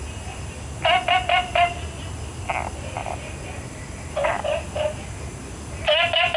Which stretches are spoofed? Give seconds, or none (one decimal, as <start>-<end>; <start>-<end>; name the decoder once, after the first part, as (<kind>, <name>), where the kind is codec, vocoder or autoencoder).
none